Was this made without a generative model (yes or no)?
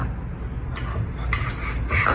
yes